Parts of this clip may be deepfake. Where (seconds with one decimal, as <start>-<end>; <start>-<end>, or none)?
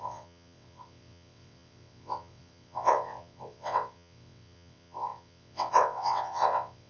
0.0-6.9